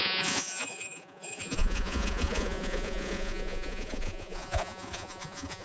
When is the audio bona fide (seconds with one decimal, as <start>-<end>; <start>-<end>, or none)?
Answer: none